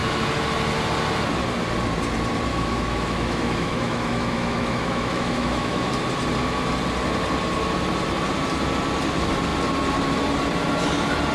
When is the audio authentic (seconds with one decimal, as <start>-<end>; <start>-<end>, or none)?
0.0-2.5; 5.9-11.3